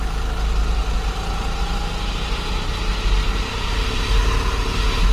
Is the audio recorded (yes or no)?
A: yes